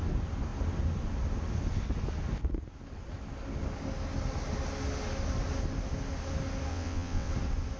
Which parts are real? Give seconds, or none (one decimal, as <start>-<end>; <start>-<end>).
0.0-6.7; 7.3-7.8